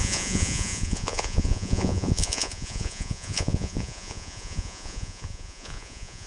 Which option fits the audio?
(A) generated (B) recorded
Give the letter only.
A